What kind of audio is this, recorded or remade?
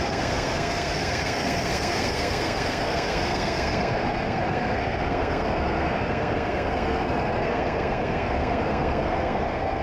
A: remade